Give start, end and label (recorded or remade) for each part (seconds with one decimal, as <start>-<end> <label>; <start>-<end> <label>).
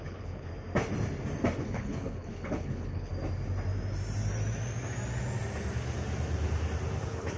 0.0-0.5 remade; 0.5-1.6 recorded; 1.6-3.1 remade; 3.1-7.0 recorded; 7.0-7.4 remade